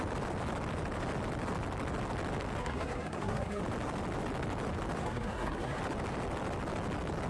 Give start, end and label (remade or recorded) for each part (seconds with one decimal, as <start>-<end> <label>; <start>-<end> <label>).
0.0-2.6 recorded; 2.6-3.6 remade; 3.6-5.0 recorded; 5.0-5.8 remade; 5.8-7.3 recorded